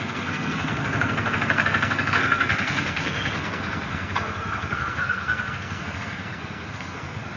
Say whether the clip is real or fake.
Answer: fake